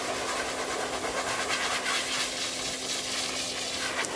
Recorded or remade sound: recorded